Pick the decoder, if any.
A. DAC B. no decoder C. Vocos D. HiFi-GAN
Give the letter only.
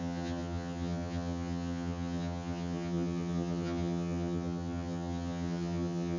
D